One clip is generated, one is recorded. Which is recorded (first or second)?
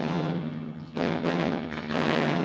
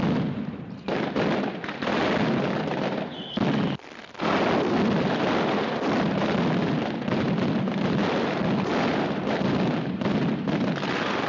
second